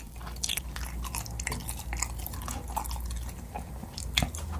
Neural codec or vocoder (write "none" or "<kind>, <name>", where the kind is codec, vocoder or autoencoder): none